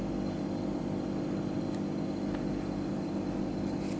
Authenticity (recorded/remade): recorded